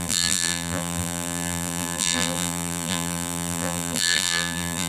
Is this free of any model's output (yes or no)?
no